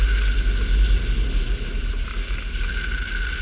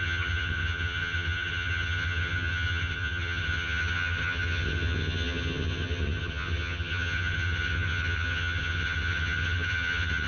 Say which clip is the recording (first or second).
first